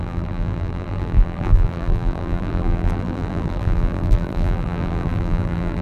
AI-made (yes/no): yes